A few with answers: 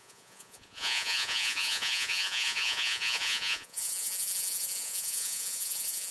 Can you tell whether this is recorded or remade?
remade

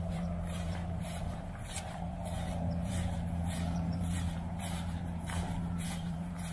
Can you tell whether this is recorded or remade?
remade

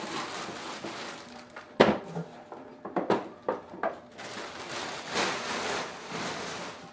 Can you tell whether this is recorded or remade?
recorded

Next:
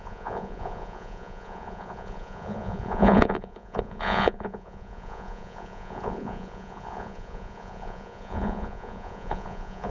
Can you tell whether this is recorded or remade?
remade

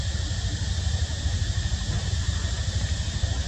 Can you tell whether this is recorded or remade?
recorded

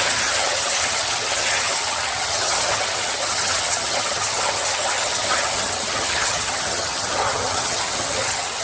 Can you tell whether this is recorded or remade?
remade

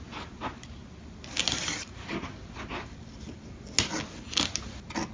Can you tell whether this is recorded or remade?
recorded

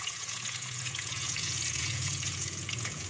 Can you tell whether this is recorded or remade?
remade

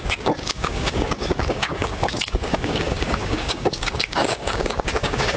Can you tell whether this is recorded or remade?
remade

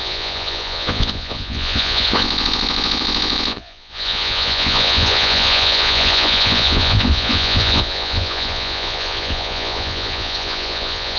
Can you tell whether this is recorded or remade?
remade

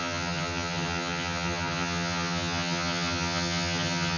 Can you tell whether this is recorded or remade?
remade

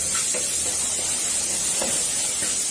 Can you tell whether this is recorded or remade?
recorded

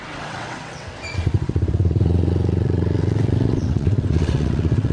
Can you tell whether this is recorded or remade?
remade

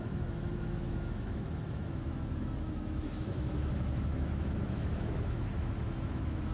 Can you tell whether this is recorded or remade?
remade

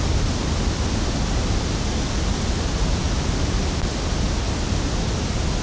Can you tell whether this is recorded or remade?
recorded